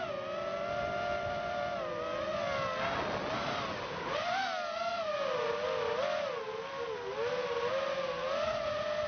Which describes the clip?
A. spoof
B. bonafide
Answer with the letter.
B